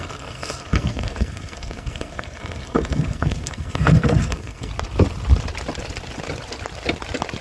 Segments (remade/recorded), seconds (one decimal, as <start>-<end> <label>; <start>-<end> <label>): 0.0-4.7 remade; 4.7-7.4 recorded